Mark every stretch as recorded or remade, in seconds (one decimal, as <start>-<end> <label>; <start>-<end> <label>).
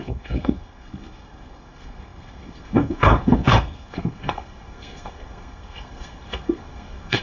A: 0.0-7.2 remade